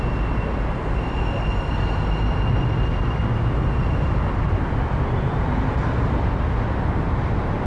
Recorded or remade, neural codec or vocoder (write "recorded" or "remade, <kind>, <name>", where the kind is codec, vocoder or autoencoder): recorded